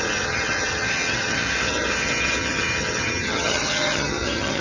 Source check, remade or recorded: remade